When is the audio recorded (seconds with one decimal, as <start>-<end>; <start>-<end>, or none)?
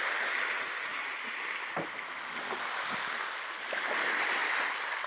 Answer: 0.0-5.1